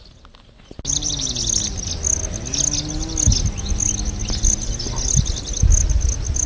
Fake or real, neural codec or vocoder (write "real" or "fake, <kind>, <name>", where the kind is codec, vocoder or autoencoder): real